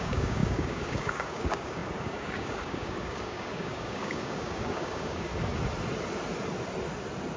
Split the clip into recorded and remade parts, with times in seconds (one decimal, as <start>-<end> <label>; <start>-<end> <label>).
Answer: 0.0-5.3 remade; 5.3-7.4 recorded